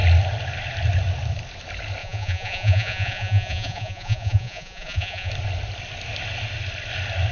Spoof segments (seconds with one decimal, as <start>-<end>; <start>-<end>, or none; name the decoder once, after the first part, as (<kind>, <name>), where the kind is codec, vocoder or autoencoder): 2.0-5.3 (vocoder, Vocos)